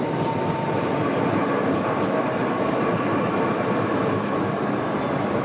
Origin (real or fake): real